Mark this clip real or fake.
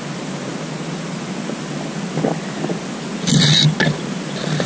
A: real